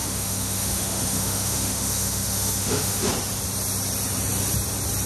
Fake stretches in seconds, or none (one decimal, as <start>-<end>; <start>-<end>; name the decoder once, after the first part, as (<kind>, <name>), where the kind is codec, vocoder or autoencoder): 0.0-3.1 (autoencoder, DAC-VAE)